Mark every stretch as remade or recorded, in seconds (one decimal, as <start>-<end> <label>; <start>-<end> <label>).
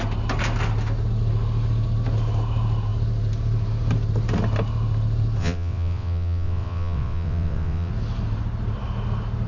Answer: 0.0-5.4 recorded; 5.4-7.9 remade; 7.9-9.5 recorded